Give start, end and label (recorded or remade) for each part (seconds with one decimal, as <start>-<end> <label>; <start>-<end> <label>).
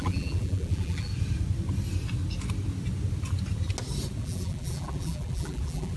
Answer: 0.0-1.1 remade; 1.1-4.2 recorded; 4.2-6.0 remade